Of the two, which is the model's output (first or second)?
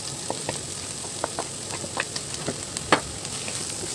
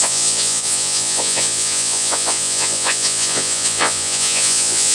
second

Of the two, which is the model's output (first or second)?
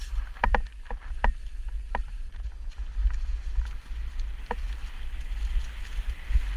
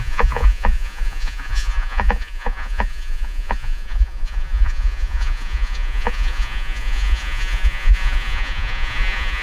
second